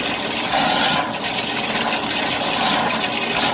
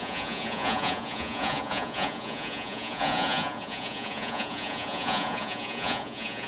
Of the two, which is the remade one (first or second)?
second